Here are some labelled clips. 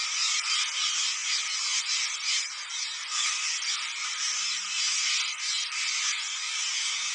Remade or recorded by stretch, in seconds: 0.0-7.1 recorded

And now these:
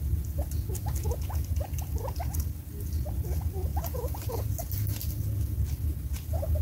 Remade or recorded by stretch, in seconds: 0.0-6.6 recorded

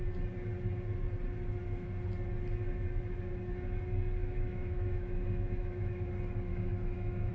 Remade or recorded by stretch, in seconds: 0.0-4.2 recorded; 4.2-6.1 remade; 6.1-6.5 recorded; 6.5-7.3 remade

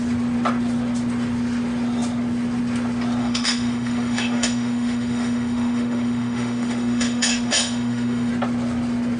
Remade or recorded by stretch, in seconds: 0.0-3.2 recorded; 3.2-8.3 remade; 8.3-9.2 recorded

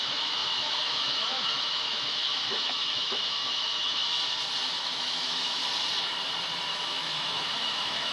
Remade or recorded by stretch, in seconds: 0.0-4.0 remade; 4.0-4.7 recorded; 4.7-5.6 remade; 5.6-6.7 recorded; 6.7-8.1 remade

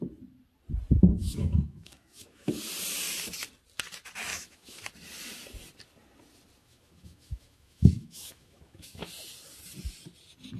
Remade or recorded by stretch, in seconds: 0.0-1.2 recorded; 1.2-2.6 remade; 2.6-4.3 recorded; 4.3-4.9 remade; 4.9-6.6 recorded; 6.6-9.1 remade; 9.1-10.6 recorded

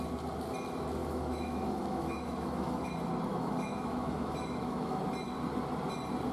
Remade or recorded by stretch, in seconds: 0.0-1.0 recorded; 1.0-2.9 remade; 2.9-3.3 recorded; 3.3-5.0 remade; 5.0-6.3 recorded

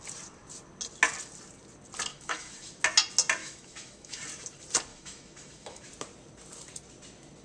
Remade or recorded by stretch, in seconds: 0.0-2.1 recorded; 2.1-2.7 remade; 2.7-3.4 recorded; 3.4-4.2 remade; 4.2-4.9 recorded; 4.9-5.9 remade; 5.9-7.4 recorded